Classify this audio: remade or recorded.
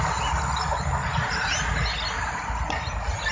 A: recorded